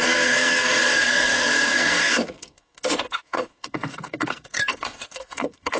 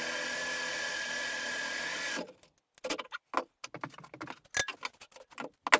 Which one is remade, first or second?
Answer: first